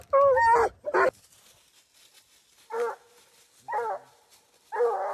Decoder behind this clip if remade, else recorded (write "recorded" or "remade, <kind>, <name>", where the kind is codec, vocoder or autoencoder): recorded